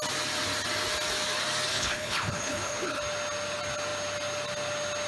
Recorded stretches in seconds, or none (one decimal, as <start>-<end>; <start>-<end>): 0.0-1.7; 3.0-5.1